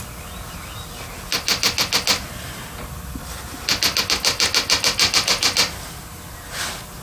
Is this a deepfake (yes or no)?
no